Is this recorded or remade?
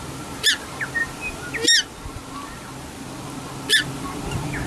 recorded